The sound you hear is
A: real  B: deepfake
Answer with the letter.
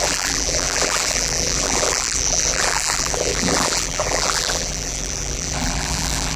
B